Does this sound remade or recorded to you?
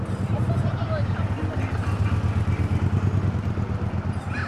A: recorded